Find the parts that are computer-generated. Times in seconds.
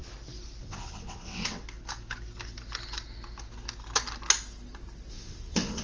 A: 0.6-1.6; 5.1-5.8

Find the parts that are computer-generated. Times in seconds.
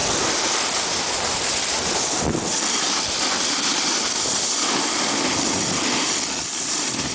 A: none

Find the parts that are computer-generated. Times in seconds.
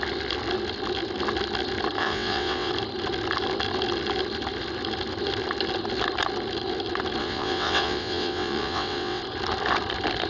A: 2.0-2.7; 7.2-9.2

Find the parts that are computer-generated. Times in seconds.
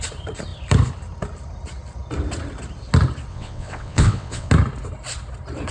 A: 3.3-4.5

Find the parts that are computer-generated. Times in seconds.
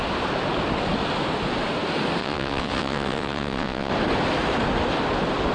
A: 2.2-3.9